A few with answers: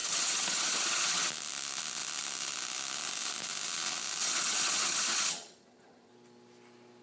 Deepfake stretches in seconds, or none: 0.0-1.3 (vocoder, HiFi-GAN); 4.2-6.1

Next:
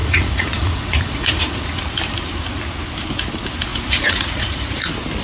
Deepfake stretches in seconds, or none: 0.0-1.8 (vocoder, Vocos); 3.7-4.8

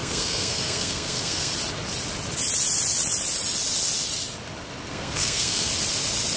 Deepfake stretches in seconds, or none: 0.0-1.5 (codec, SNAC); 4.9-5.7

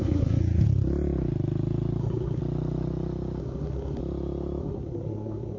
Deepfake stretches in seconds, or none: 0.0-0.4 (codec, SNAC); 2.0-2.4; 3.4-4.0; 4.6-5.6

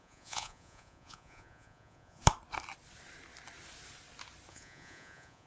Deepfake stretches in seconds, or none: 0.0-2.2 (vocoder, Vocos); 4.5-5.5

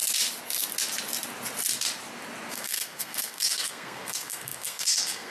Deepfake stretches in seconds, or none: 2.5-5.3 (codec, SNAC)

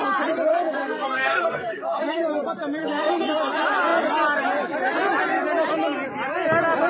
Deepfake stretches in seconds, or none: 0.5-2.2 (codec, SNAC); 2.8-3.3